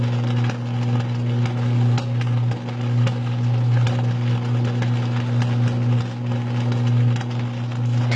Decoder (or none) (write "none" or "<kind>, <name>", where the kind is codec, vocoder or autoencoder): none